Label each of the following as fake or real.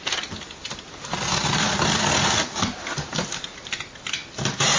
real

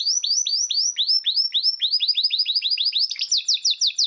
real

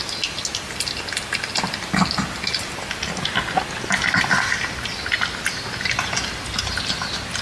real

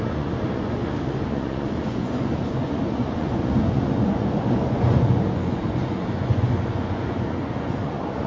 fake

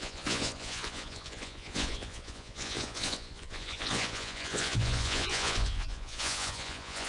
fake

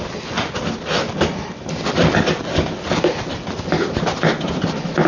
real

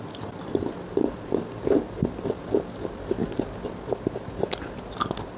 real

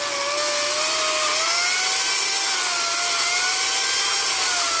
real